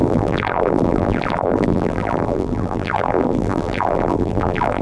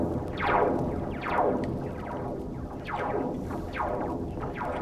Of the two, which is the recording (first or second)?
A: second